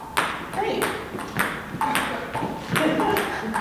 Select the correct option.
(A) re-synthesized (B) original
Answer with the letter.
B